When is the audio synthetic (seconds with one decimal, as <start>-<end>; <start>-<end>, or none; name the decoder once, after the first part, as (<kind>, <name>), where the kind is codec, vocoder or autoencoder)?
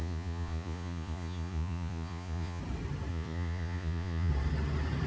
0.0-2.6 (vocoder, Vocos); 3.1-4.3